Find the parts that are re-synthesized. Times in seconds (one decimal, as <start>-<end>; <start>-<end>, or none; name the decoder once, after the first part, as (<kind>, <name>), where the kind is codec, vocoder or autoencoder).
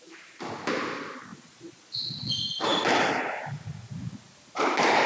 1.3-2.3 (vocoder, Vocos)